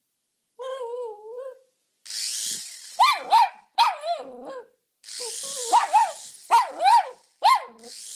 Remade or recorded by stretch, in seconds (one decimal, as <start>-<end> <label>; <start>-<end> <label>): 0.0-8.2 recorded